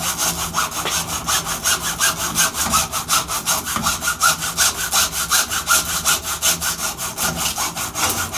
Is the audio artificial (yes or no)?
no